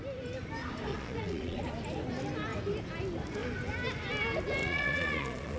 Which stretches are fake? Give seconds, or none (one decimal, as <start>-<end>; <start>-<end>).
0.9-1.6; 4.6-5.6